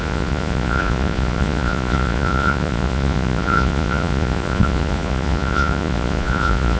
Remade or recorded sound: remade